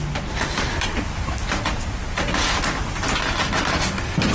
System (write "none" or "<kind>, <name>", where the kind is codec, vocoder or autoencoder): none